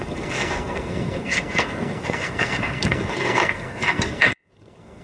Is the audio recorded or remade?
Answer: remade